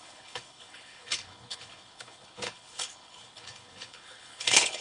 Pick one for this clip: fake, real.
fake